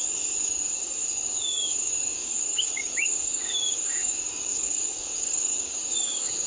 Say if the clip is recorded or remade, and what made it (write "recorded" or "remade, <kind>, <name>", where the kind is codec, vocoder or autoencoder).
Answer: remade, codec, DAC